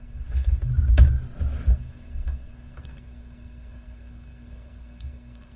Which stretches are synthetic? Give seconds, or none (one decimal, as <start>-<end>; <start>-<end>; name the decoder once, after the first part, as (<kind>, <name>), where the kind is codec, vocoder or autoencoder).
0.0-0.7 (codec, SNAC); 1.7-5.6

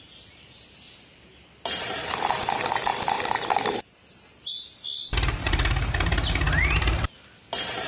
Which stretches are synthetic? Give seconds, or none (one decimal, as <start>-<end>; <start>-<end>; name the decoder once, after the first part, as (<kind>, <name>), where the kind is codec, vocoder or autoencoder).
none